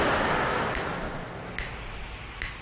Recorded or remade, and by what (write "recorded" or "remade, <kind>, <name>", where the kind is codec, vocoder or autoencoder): recorded